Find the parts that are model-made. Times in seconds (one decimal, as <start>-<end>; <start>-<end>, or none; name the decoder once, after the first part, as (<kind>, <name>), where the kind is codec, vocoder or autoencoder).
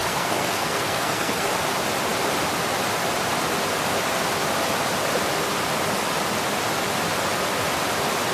0.0-1.5 (codec, SNAC)